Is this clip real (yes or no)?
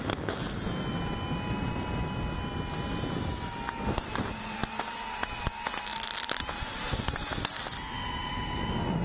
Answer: yes